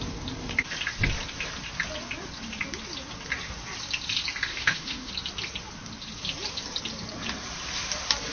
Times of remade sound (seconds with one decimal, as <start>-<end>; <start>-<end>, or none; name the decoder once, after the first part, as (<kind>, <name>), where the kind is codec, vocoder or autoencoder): 4.5-5.1 (autoencoder, DAC-VAE)